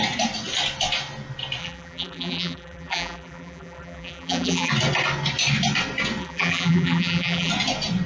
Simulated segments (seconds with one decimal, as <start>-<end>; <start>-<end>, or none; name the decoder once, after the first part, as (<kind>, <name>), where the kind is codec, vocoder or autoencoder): 1.6-4.7 (vocoder, BigVGAN v2); 6.2-7.5